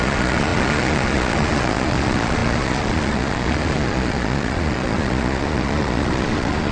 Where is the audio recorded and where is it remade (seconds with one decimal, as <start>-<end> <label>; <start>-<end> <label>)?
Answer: 0.0-6.7 remade